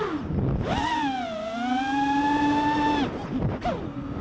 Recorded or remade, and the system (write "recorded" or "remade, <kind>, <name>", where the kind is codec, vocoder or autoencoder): recorded